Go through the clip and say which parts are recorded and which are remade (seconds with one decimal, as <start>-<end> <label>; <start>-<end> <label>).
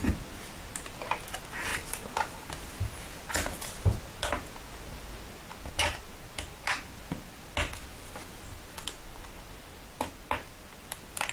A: 0.0-11.3 recorded